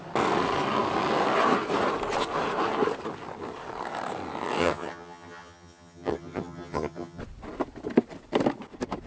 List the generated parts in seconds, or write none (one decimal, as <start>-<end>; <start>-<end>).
4.6-7.2